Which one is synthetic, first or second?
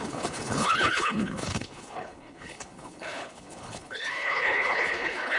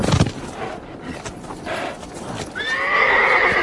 first